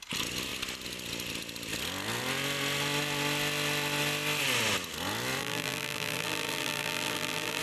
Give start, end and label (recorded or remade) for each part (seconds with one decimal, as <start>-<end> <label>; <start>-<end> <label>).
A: 0.0-5.4 recorded; 5.4-7.6 remade